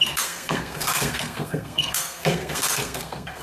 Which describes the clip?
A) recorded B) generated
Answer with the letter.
B